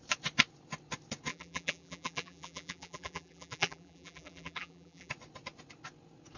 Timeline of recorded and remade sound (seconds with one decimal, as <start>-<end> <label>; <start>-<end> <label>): 0.0-1.3 recorded; 1.3-5.1 remade; 5.1-6.4 recorded